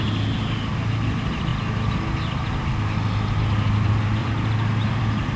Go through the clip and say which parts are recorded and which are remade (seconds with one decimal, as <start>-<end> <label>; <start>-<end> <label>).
0.0-4.2 recorded; 4.2-5.0 remade; 5.0-5.4 recorded